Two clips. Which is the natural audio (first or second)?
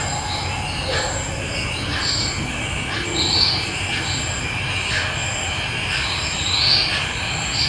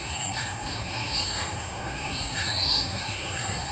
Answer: first